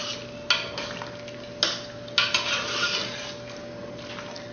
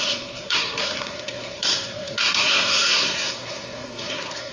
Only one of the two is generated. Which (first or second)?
second